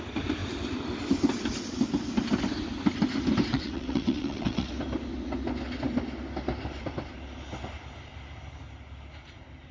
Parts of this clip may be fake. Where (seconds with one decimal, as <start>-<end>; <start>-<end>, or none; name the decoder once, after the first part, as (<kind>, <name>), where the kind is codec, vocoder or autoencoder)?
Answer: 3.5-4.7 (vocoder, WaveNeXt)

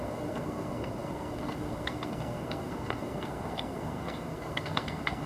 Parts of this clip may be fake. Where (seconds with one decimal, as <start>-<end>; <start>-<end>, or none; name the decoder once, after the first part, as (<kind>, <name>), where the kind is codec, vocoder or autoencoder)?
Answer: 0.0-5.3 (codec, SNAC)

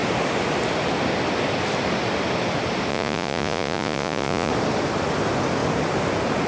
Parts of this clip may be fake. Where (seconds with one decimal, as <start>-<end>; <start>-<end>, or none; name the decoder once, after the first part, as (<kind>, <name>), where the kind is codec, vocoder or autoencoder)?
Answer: 2.9-4.5 (vocoder, Vocos)